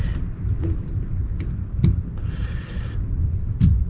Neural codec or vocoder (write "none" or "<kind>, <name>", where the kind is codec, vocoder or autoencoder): none